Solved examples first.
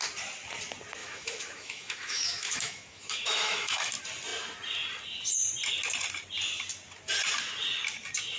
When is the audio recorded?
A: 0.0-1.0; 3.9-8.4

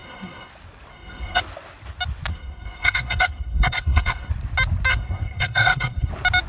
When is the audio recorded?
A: 0.5-0.9; 1.4-2.3; 4.3-4.9; 6.1-6.5

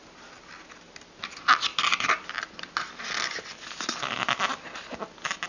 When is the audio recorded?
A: 0.0-5.5

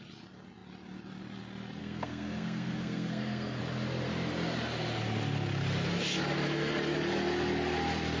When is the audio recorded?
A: 0.0-1.8; 3.6-8.2

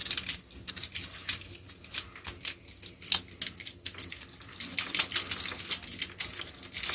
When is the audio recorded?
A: 0.0-6.9

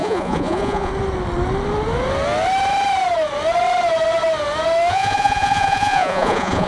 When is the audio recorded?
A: 0.9-4.9

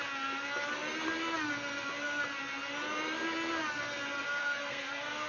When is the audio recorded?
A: 0.0-4.4